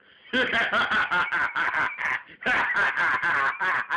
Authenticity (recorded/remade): recorded